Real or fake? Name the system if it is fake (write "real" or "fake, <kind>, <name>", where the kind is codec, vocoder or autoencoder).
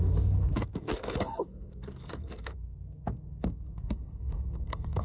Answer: fake, codec, SNAC